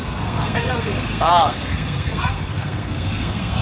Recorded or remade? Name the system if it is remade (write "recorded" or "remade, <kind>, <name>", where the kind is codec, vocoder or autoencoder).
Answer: remade, codec, SNAC